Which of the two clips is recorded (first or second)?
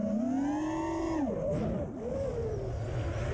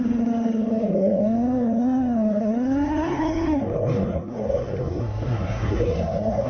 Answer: first